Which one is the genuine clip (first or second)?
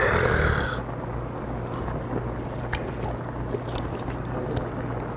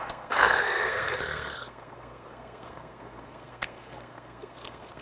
first